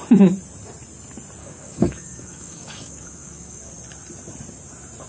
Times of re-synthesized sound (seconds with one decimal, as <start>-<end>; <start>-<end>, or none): 1.4-3.7

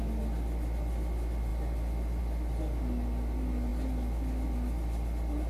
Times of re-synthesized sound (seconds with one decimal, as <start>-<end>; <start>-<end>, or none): none

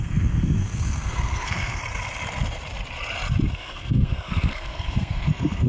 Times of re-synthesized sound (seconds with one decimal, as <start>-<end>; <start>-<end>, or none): 0.0-1.8; 3.5-5.7

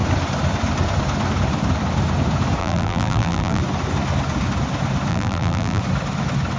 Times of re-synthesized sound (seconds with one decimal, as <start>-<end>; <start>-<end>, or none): 2.6-3.6; 5.1-5.8

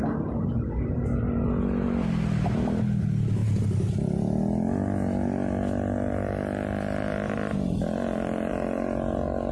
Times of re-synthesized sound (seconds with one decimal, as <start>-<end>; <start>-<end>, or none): none

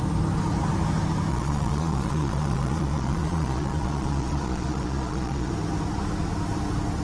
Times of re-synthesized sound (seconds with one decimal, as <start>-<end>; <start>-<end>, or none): 1.3-5.5